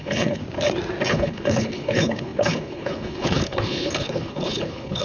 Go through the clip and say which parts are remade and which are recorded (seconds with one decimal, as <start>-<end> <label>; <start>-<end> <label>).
0.0-0.4 remade; 0.4-1.1 recorded; 1.1-5.0 remade